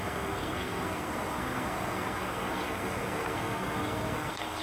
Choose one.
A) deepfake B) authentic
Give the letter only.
A